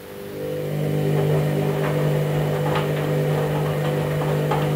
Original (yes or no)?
yes